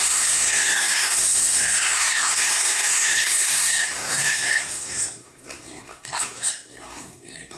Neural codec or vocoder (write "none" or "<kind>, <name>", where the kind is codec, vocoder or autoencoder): codec, SNAC